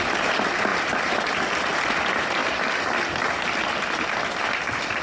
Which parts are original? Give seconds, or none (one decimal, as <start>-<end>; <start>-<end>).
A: 0.0-0.7; 1.2-5.0